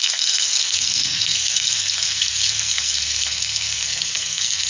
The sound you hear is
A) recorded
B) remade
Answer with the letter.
B